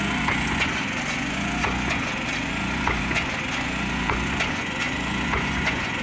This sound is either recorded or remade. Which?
remade